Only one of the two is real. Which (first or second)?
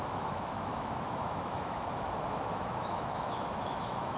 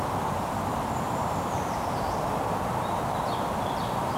second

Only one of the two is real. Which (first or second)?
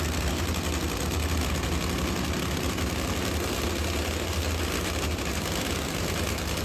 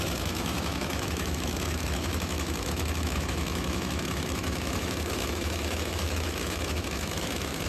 first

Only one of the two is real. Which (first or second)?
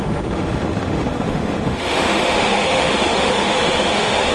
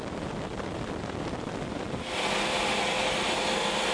second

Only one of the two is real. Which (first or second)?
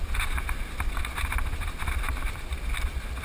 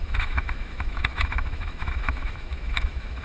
first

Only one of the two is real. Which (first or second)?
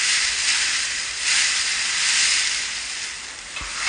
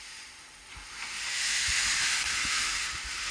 first